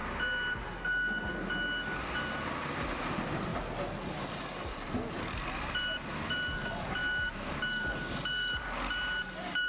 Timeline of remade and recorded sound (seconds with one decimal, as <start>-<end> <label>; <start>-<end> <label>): 0.0-2.8 recorded; 2.8-7.0 remade; 7.0-7.8 recorded; 7.8-9.7 remade